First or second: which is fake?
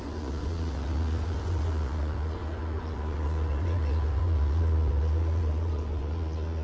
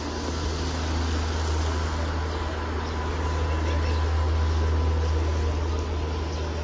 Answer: first